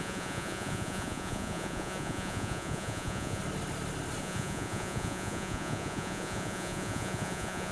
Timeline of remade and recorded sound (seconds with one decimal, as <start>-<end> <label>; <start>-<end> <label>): 0.0-3.4 remade; 3.4-4.2 recorded; 4.2-7.7 remade

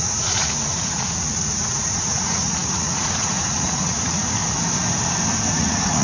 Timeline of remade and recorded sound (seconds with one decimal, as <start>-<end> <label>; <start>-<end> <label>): 0.0-4.4 remade; 4.4-5.5 recorded; 5.5-6.0 remade

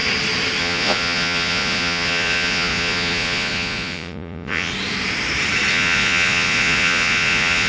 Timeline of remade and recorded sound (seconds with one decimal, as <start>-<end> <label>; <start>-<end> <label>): 0.0-0.6 recorded; 0.6-4.7 remade; 4.7-5.7 recorded; 5.7-7.7 remade

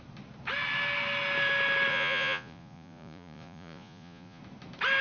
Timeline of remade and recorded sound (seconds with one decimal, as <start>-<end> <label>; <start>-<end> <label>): 0.0-1.9 recorded; 1.9-4.4 remade; 4.4-5.0 recorded